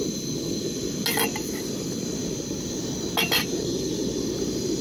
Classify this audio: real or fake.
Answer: real